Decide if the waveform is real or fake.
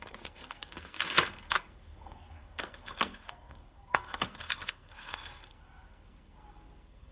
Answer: fake